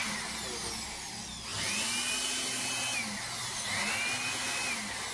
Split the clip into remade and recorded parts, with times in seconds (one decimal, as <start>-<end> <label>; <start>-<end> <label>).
0.0-5.1 recorded